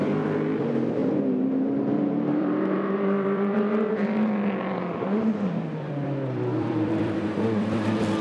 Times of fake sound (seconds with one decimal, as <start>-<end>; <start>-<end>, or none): 0.0-1.0; 1.8-8.2